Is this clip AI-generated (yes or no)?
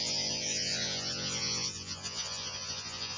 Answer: yes